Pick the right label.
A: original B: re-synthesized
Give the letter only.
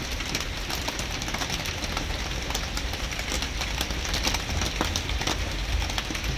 A